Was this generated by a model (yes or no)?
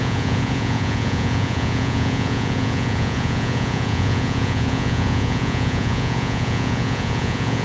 yes